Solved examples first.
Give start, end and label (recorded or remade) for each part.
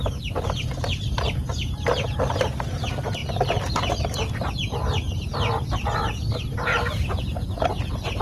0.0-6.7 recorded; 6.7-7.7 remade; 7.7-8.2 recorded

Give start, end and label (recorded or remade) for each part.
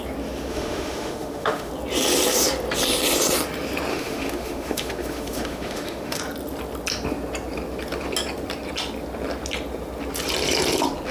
0.0-0.5 recorded; 0.5-1.7 remade; 1.7-3.9 recorded; 3.9-6.2 remade; 6.2-11.1 recorded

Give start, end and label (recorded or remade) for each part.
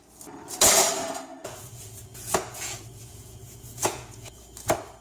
0.0-1.4 recorded; 1.4-4.4 remade; 4.4-5.0 recorded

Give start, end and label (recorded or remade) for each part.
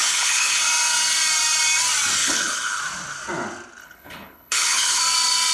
0.0-0.6 remade; 0.6-2.2 recorded; 2.2-2.8 remade; 2.8-3.8 recorded; 3.8-5.0 remade; 5.0-5.5 recorded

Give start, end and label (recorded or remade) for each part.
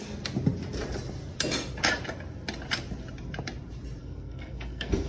0.0-4.0 recorded; 4.0-5.1 remade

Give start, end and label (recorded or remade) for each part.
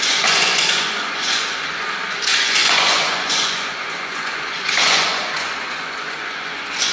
0.0-6.9 remade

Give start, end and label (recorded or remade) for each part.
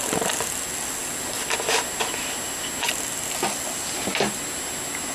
0.0-5.1 recorded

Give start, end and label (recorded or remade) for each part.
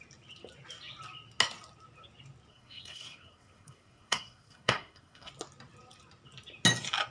0.0-2.5 recorded; 2.5-5.3 remade; 5.3-7.1 recorded